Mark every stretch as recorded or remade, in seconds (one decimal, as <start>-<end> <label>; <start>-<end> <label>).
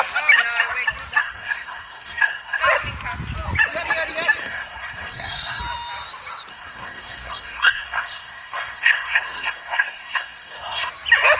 0.0-1.2 recorded; 1.2-2.6 remade; 2.6-4.4 recorded; 4.4-5.6 remade; 5.6-6.5 recorded; 6.5-10.9 remade; 10.9-11.4 recorded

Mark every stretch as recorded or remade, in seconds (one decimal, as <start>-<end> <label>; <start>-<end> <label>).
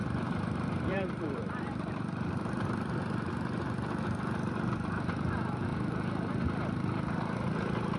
0.0-3.3 remade; 3.3-8.0 recorded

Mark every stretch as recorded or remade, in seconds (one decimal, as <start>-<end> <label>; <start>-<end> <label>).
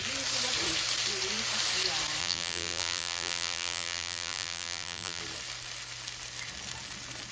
0.0-2.2 recorded; 2.2-5.2 remade; 5.2-7.3 recorded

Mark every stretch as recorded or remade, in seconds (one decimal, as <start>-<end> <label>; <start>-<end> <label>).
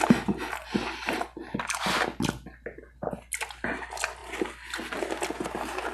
0.0-5.9 recorded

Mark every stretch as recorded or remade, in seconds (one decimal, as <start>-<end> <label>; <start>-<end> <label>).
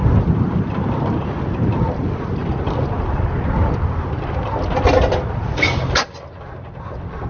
0.0-7.3 recorded